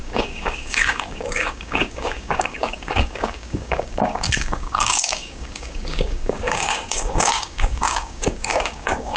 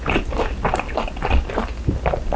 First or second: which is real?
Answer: second